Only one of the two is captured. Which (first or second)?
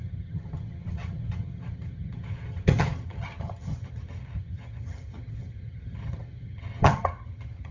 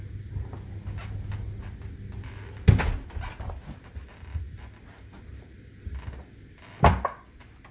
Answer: second